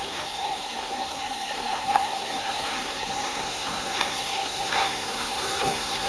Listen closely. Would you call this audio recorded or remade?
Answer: remade